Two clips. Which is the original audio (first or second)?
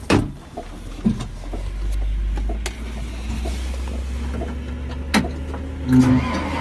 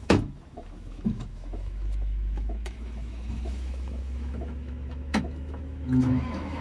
first